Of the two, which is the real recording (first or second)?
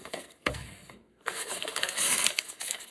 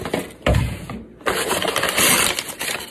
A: second